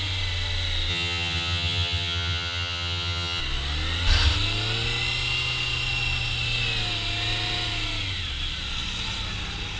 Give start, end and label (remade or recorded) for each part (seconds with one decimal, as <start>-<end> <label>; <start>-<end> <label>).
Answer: 0.0-0.9 recorded; 0.9-3.4 remade; 3.4-9.8 recorded